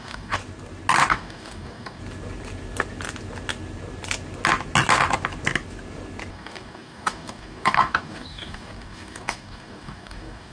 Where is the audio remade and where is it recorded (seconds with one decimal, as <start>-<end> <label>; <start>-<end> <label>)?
0.0-0.4 remade; 0.4-1.1 recorded; 1.1-2.0 remade; 2.0-6.3 recorded; 6.3-10.5 remade